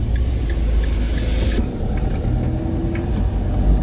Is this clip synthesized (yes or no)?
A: no